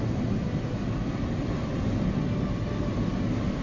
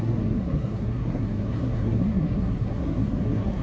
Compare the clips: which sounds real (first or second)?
first